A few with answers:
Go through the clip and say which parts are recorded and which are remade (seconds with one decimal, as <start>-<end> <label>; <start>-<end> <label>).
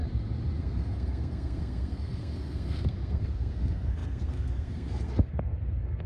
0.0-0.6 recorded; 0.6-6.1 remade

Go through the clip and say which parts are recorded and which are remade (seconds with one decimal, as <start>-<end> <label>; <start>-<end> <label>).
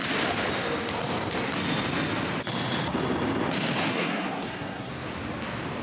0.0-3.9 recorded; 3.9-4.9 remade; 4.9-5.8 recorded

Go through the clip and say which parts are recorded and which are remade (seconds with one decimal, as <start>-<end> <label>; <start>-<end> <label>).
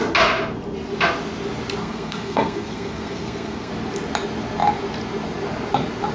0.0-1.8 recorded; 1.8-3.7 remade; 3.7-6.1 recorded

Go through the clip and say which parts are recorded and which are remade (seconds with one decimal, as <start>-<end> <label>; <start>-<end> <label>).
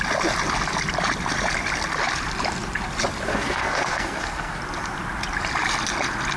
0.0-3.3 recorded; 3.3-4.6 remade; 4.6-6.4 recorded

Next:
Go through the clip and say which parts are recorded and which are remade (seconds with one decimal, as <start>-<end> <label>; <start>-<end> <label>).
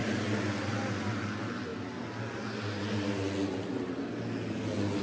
0.0-5.0 recorded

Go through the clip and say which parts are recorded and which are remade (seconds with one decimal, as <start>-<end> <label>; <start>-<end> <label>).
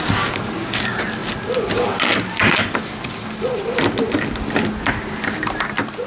0.0-6.1 recorded